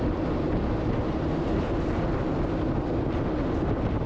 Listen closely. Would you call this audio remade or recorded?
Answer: recorded